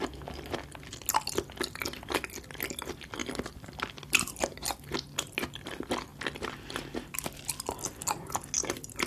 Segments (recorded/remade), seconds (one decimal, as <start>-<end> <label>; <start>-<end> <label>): 0.0-3.2 recorded; 3.2-3.8 remade; 3.8-9.1 recorded

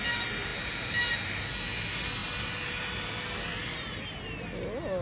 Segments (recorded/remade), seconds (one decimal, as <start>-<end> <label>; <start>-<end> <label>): 0.0-5.0 recorded